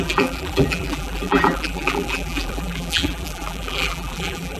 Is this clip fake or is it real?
fake